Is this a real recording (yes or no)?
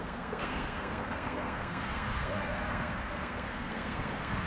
no